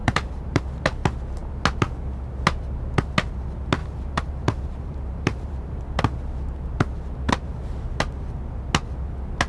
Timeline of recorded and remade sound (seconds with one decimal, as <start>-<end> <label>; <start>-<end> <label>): 0.0-0.6 remade; 0.6-3.8 recorded; 3.8-5.8 remade; 5.8-9.5 recorded